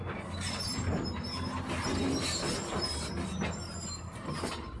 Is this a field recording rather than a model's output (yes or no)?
yes